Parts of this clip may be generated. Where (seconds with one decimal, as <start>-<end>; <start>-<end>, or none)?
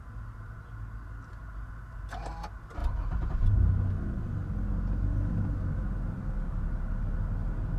none